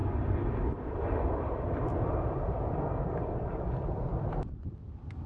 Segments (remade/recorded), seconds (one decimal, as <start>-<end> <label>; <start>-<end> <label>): 0.0-1.5 recorded; 1.5-1.9 remade; 1.9-2.5 recorded; 2.5-5.3 remade